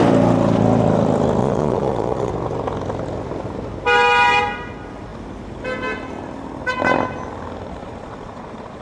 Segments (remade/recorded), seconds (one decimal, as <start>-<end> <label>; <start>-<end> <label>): 0.0-1.4 recorded; 1.4-2.3 remade; 2.3-7.8 recorded; 7.8-8.8 remade